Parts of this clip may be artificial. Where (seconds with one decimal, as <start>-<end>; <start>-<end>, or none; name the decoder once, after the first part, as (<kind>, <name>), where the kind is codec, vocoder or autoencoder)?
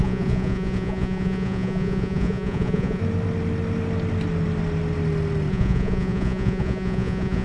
0.0-3.0 (vocoder, Vocos); 5.5-7.4